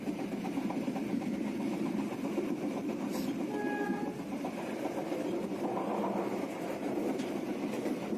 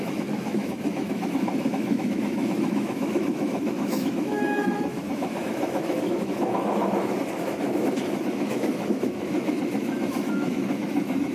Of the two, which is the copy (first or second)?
second